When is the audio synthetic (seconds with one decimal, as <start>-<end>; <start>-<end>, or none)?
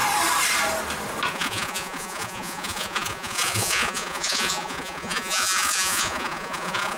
1.3-7.0